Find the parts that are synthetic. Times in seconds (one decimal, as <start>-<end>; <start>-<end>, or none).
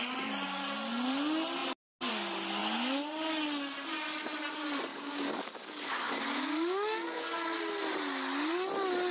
4.9-7.6